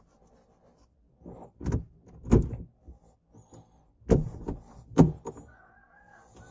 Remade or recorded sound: recorded